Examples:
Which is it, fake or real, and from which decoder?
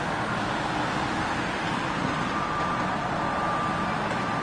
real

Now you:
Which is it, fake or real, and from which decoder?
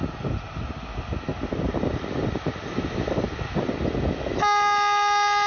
real